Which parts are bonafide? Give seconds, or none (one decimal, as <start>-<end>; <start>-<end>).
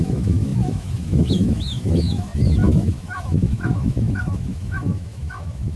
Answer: none